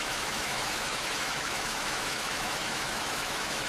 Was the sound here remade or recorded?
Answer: remade